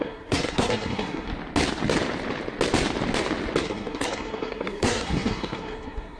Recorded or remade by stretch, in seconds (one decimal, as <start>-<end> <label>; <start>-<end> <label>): 0.0-1.3 remade; 1.3-3.6 recorded; 3.6-6.2 remade